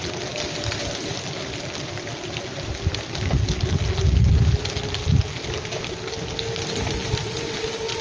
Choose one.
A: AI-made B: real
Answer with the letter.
B